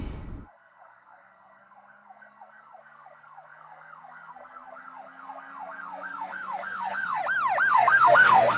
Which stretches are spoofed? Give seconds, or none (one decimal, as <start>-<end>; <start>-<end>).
0.0-7.2; 7.7-8.6